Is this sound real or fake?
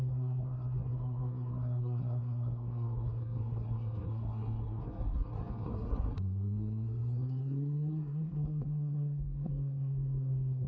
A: fake